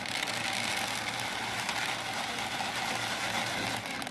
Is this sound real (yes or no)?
yes